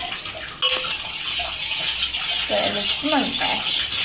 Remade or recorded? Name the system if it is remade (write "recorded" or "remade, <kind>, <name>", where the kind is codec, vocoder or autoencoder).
recorded